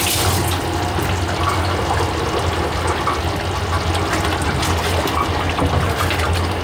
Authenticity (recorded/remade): recorded